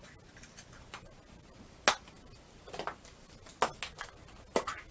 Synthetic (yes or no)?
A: no